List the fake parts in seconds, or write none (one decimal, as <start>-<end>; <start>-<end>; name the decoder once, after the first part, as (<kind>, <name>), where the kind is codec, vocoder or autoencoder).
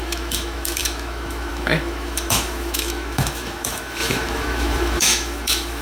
0.0-5.8 (autoencoder, DAC-VAE)